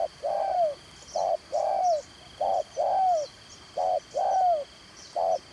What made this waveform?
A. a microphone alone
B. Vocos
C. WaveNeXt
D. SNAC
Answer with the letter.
A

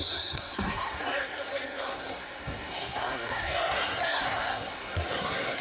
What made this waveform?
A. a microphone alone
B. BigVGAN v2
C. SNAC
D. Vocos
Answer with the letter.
C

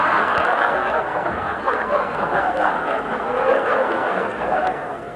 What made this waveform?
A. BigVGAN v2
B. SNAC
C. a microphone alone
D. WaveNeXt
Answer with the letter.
B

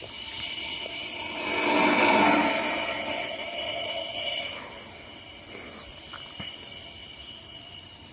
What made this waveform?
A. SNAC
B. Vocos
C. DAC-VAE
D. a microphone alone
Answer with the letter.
D